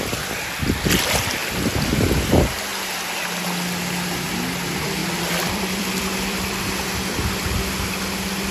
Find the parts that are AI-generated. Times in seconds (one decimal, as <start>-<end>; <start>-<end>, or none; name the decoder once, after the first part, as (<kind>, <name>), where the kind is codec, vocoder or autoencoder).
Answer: 5.0-6.6 (vocoder, BigVGAN v2)